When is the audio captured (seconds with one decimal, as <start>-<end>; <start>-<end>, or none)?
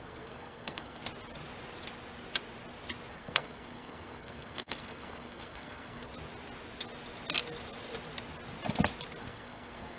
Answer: 1.0-3.1; 6.1-9.2